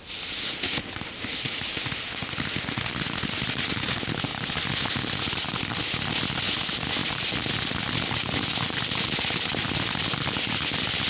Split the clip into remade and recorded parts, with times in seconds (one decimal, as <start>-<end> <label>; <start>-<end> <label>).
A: 0.0-7.0 recorded; 7.0-10.7 remade; 10.7-11.1 recorded